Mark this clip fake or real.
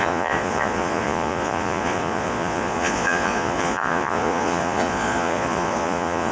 fake